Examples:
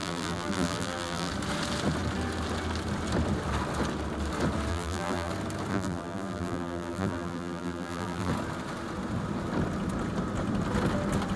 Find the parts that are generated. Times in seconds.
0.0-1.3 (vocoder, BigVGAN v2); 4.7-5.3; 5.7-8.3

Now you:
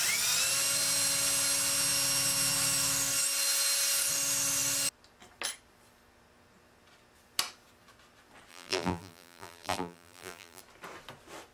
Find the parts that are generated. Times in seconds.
8.5-10.6 (vocoder, BigVGAN v2)

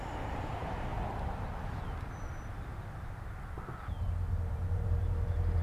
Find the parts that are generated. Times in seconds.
0.0-0.9 (vocoder, BigVGAN v2); 4.3-5.6

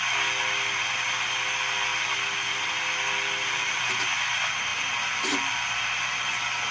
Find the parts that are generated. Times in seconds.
1.9-3.8 (vocoder, BigVGAN v2); 4.7-6.7

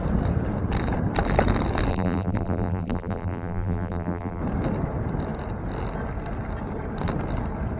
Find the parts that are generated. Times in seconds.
1.9-4.4 (vocoder, BigVGAN v2)